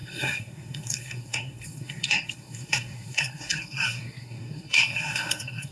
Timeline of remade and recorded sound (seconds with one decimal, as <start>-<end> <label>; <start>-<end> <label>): 0.0-5.7 remade